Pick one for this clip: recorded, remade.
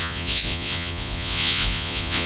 remade